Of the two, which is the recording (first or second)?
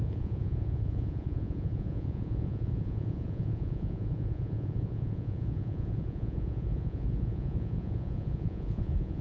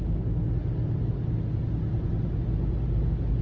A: second